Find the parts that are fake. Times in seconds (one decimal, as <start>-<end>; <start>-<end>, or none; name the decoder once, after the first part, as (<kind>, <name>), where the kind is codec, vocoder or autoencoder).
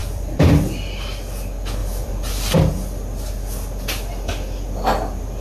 0.0-0.5 (vocoder, BigVGAN v2); 1.8-2.6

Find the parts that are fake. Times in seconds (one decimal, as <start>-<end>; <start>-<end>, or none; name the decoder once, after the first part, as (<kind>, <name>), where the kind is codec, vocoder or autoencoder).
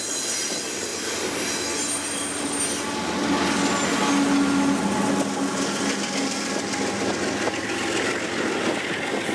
none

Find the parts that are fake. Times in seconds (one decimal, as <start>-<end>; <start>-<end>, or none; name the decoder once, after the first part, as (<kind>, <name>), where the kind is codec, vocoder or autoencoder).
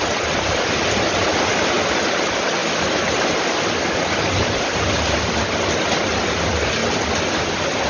none